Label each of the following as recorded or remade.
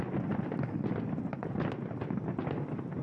recorded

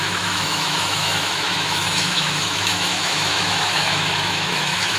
remade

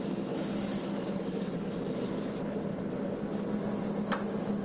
recorded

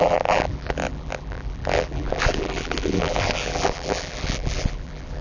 remade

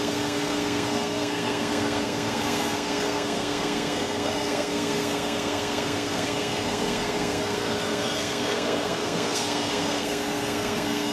remade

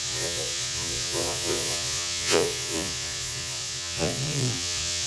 remade